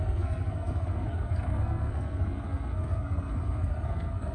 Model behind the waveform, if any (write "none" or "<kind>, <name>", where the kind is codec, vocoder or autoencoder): codec, SNAC